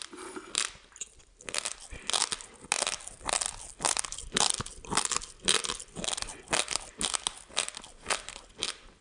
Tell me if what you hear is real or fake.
real